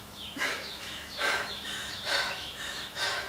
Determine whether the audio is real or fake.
fake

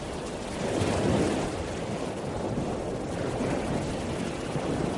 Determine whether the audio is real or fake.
real